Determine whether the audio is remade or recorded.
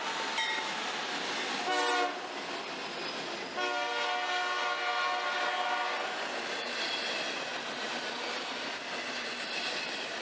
recorded